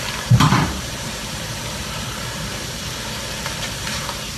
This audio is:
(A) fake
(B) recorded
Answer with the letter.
A